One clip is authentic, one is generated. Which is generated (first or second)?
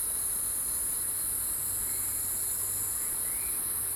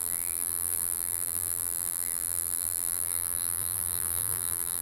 second